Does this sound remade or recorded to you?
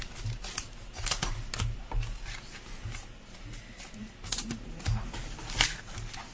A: recorded